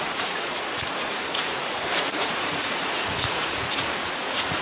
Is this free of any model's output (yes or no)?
no